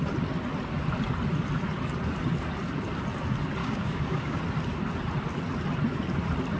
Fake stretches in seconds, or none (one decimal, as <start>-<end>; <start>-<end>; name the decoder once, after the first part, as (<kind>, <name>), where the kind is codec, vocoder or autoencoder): 3.6-4.4 (codec, DAC)